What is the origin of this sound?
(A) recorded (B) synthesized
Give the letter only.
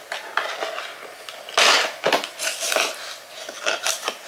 A